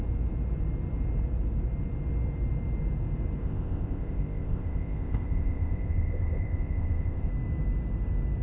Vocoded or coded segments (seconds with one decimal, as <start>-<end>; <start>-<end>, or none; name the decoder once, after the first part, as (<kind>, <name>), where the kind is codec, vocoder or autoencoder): 3.4-7.3 (codec, ZipCodec)

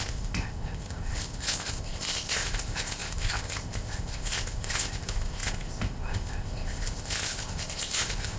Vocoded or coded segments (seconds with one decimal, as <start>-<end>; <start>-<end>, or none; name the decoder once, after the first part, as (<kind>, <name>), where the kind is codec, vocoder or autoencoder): 0.0-8.4 (codec, ZipCodec)